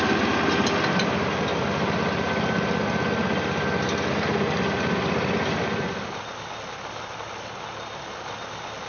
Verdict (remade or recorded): recorded